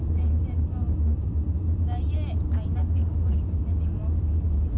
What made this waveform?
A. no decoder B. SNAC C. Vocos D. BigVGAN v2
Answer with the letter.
A